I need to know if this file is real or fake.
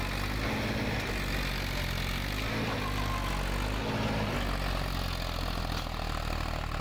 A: real